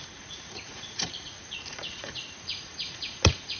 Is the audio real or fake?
fake